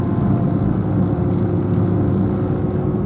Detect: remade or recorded recorded